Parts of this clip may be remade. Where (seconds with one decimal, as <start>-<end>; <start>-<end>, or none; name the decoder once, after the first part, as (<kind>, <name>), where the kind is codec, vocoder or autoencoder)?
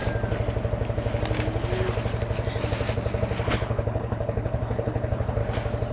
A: 3.5-5.4 (codec, HILCodec)